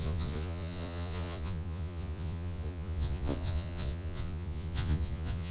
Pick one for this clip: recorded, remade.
remade